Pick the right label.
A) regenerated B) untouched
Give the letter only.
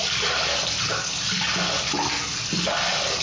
B